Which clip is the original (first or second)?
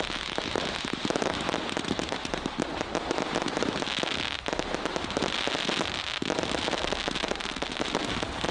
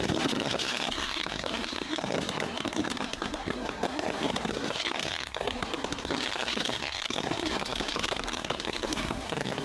first